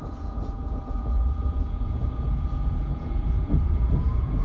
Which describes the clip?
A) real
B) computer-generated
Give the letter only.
B